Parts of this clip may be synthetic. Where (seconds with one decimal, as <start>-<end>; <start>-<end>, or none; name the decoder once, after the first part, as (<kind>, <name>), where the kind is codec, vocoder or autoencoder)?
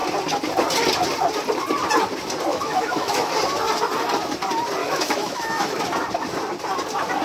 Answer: 2.5-3.3 (autoencoder, DAC-VAE); 4.8-5.8